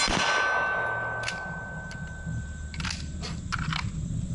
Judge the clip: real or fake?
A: real